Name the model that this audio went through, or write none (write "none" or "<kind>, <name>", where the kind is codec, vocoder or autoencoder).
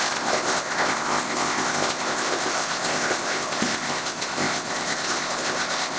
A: codec, ZipCodec